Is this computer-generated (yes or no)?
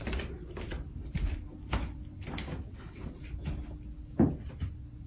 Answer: no